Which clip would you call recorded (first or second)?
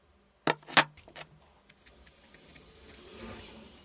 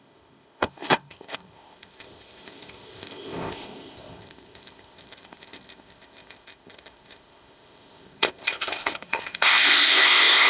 first